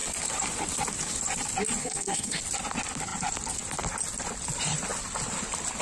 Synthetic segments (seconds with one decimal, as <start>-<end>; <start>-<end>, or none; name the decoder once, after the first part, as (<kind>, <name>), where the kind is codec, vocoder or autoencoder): 1.8-2.4 (codec, SNAC)